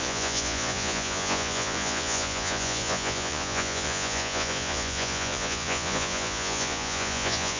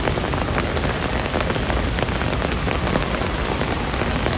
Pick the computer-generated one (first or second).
first